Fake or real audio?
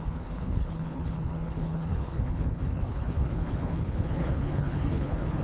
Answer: fake